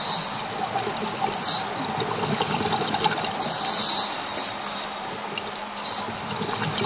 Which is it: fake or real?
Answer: real